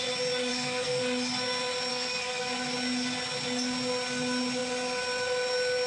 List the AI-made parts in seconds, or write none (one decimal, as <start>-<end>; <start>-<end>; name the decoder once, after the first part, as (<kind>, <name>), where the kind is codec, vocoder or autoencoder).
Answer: 0.5-1.0 (codec, SNAC); 1.9-2.5